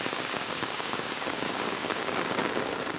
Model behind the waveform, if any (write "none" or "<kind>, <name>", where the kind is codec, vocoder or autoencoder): codec, DAC